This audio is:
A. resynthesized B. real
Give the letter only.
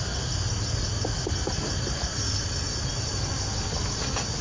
B